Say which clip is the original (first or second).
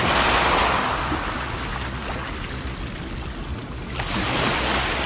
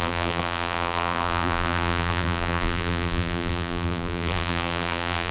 first